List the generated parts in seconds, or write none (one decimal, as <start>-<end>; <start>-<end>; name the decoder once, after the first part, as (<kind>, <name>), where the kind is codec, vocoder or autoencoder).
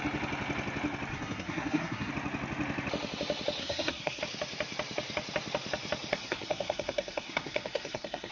1.1-2.1 (codec, SNAC); 3.6-4.2; 6.1-8.3